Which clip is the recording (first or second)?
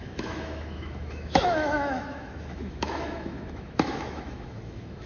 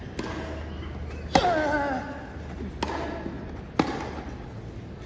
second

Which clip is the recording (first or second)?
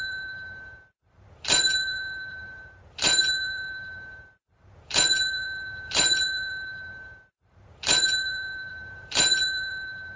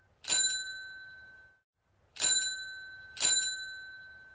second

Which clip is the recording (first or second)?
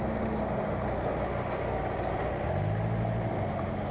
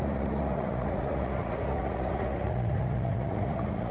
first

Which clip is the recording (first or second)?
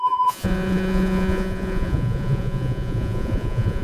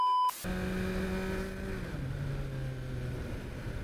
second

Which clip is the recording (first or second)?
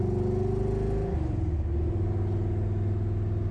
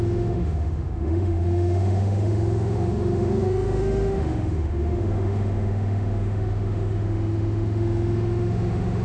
first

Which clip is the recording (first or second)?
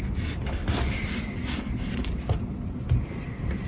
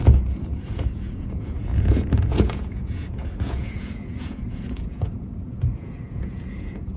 first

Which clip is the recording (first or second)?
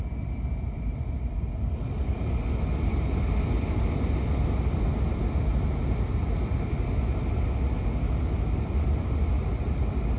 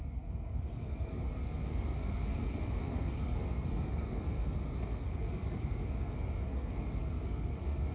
first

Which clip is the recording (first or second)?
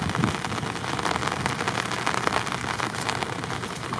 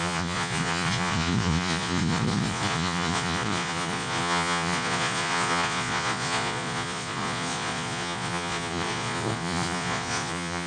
first